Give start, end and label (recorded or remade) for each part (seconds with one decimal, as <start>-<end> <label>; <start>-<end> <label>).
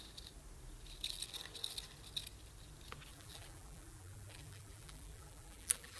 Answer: 0.0-3.1 recorded; 3.1-6.0 remade